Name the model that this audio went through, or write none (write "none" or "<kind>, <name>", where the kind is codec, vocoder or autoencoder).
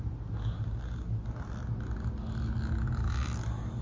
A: none